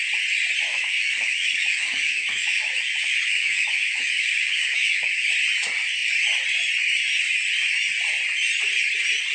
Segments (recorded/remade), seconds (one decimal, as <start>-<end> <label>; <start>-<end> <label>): 0.0-0.7 recorded; 0.7-5.3 remade; 5.3-9.3 recorded